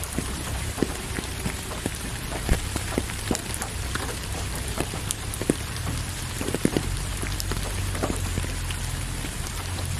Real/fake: fake